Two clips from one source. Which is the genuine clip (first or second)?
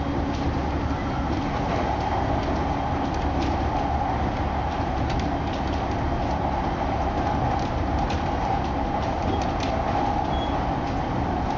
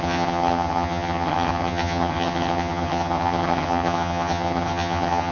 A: first